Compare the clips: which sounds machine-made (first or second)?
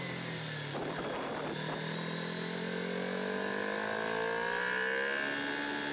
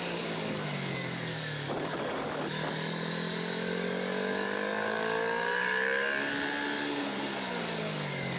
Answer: second